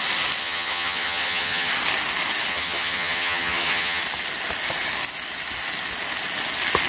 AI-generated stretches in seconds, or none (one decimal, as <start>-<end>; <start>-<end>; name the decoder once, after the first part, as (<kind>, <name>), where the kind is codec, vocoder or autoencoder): 0.4-1.7 (vocoder, HiFi-GAN); 2.5-4.0